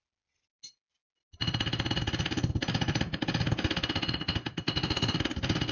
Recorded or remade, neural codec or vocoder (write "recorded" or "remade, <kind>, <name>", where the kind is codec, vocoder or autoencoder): recorded